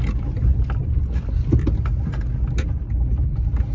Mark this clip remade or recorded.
recorded